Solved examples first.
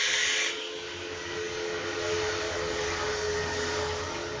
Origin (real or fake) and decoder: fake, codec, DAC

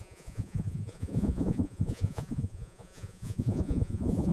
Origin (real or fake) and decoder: fake, vocoder, Vocos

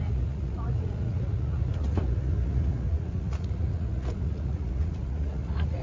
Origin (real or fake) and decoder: fake, vocoder, Vocos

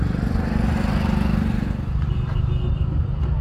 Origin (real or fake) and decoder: real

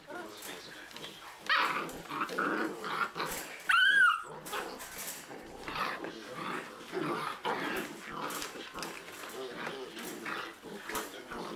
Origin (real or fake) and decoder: real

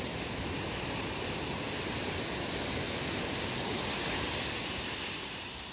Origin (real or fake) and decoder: real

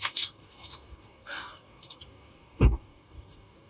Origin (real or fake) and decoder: fake, codec, DAC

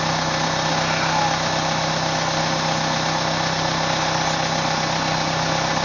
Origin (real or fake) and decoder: real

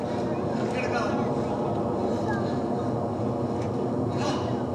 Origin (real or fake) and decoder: real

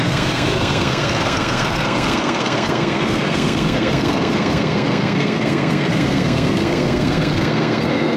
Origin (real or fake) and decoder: fake, codec, SNAC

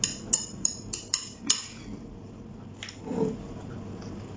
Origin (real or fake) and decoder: real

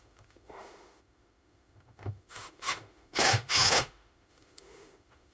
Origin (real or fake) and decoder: fake, autoencoder, DAC-VAE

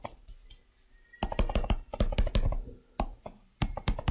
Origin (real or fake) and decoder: real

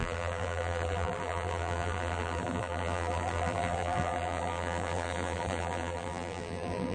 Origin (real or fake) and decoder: fake, vocoder, BigVGAN v2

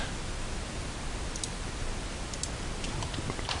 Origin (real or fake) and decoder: real